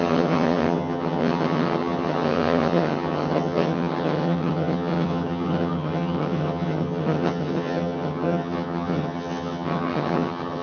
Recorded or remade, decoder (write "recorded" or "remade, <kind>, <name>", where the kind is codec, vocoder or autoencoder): remade, vocoder, HiFi-GAN